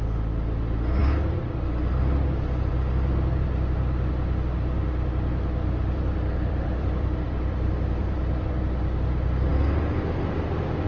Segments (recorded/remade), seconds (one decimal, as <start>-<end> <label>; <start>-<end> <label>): 0.0-5.6 recorded; 5.6-8.5 remade; 8.5-10.9 recorded